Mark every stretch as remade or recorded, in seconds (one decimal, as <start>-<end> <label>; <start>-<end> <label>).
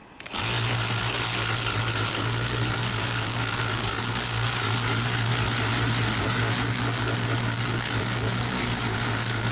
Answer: 0.0-2.1 recorded; 2.1-5.3 remade; 5.3-6.2 recorded; 6.2-9.5 remade